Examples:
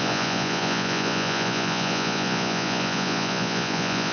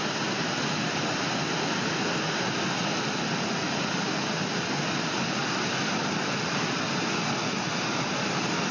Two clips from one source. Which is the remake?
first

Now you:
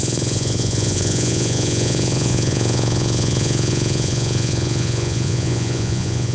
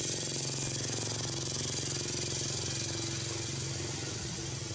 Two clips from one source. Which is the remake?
first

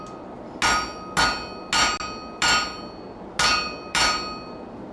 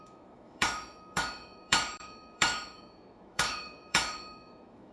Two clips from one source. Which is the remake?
second